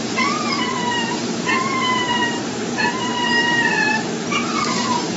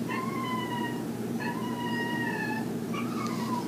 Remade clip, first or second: first